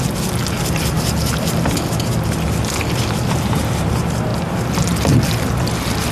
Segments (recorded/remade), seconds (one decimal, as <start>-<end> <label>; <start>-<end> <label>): 0.0-6.1 recorded